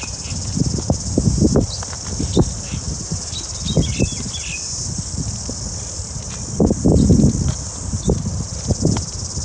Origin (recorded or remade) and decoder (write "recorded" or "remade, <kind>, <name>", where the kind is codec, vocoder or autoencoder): recorded